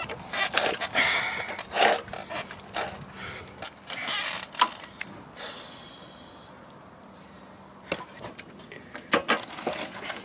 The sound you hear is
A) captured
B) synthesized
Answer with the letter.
A